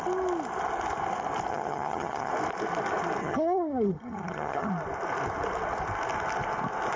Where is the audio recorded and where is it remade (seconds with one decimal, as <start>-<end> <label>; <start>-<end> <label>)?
0.0-1.5 recorded; 1.5-2.3 remade; 2.3-3.2 recorded; 3.2-4.7 remade; 4.7-7.0 recorded